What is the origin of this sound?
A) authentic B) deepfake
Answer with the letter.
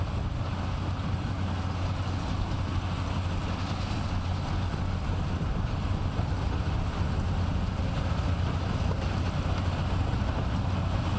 A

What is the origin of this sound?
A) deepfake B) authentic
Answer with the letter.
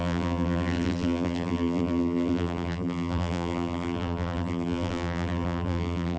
A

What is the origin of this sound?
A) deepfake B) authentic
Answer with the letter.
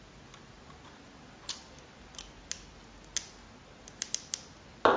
B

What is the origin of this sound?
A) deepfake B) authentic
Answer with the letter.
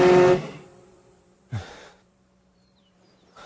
A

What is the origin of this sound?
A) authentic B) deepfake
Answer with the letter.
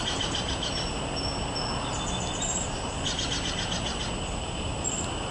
A